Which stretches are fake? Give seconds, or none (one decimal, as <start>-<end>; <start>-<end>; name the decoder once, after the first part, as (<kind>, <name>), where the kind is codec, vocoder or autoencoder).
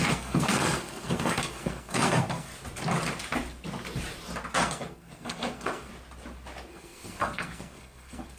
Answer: 0.0-2.5 (codec, SNAC); 4.5-5.9; 6.7-8.4